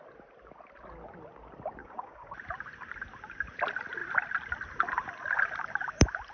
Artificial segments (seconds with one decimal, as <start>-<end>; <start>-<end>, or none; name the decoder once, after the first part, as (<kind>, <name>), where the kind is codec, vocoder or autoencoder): 1.8-2.3 (codec, DAC)